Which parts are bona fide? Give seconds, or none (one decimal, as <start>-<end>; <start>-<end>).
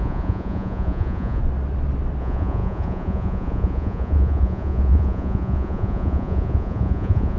1.4-2.2